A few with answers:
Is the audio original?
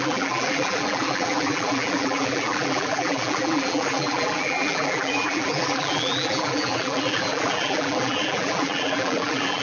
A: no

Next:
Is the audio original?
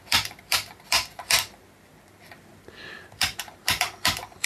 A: no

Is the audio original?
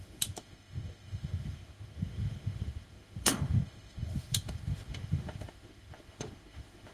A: no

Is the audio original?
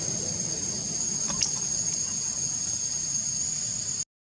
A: yes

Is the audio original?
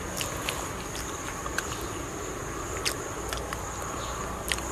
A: yes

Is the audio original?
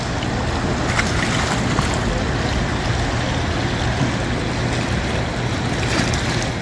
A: yes